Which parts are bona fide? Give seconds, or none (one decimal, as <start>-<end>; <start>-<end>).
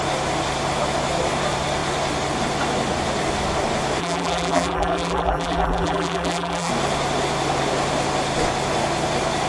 0.0-4.0; 6.7-9.5